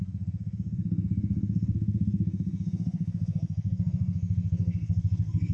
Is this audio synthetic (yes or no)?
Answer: yes